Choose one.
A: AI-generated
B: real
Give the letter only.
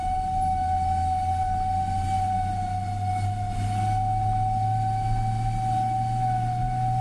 B